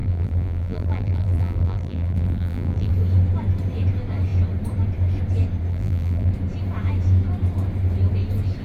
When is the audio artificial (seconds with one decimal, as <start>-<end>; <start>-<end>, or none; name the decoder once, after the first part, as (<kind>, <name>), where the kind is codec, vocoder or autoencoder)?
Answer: 0.0-2.9 (vocoder, BigVGAN v2); 5.7-6.3